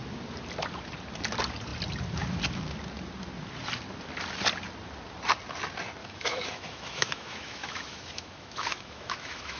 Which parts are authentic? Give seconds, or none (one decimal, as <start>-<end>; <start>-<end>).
0.0-6.0